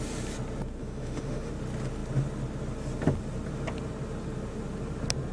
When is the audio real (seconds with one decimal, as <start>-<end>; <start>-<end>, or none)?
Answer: 0.0-0.8; 1.5-5.3